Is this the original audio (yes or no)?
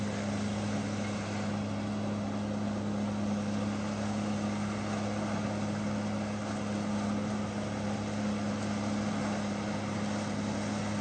yes